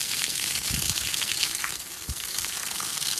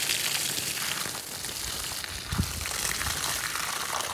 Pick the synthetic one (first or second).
first